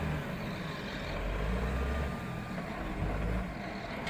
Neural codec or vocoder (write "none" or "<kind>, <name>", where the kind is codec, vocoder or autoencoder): none